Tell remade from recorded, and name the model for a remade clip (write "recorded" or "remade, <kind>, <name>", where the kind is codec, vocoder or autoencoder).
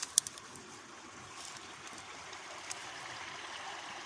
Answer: recorded